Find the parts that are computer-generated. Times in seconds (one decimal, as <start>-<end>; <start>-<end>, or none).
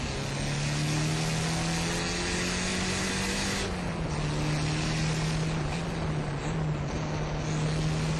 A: none